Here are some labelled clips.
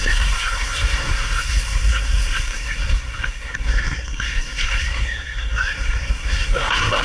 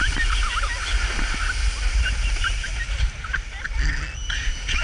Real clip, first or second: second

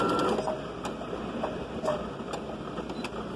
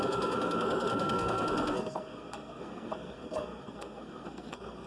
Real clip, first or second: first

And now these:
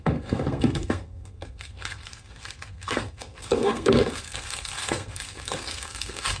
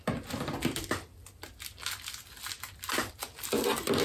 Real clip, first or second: second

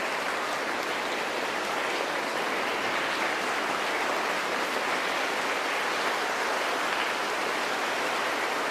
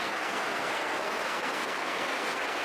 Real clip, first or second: first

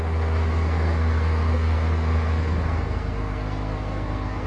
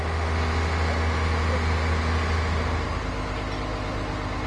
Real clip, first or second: second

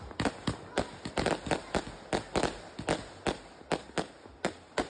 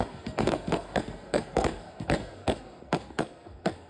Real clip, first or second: first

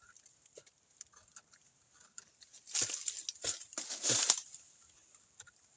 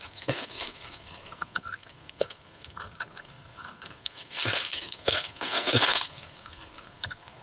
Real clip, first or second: first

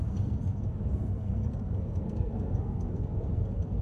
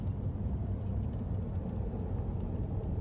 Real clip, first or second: second